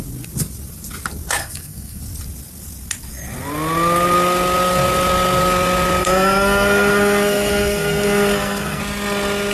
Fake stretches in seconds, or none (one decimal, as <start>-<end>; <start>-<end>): 1.4-2.0; 6.0-8.8